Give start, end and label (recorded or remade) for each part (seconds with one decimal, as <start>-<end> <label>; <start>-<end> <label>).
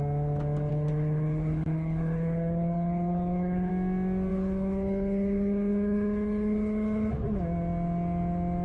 0.0-0.7 recorded; 0.7-3.7 remade; 3.7-4.3 recorded; 4.3-7.1 remade; 7.1-8.6 recorded